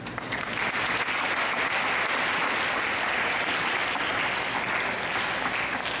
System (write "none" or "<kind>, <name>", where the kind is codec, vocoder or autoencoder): none